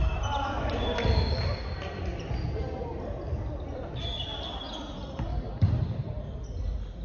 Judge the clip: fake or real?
real